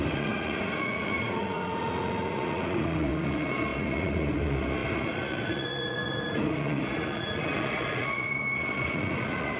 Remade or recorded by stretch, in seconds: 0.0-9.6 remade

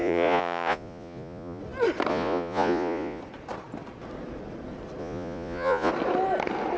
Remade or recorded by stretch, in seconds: 0.0-1.6 remade; 1.6-2.1 recorded; 2.1-3.2 remade; 3.2-5.0 recorded; 5.0-5.9 remade; 5.9-6.8 recorded

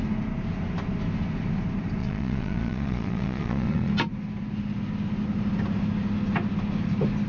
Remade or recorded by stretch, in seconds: 0.0-2.0 recorded; 2.0-3.9 remade; 3.9-7.3 recorded

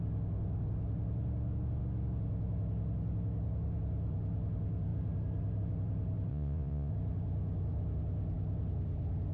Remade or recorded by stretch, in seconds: 0.0-6.3 recorded; 6.3-6.9 remade; 6.9-9.3 recorded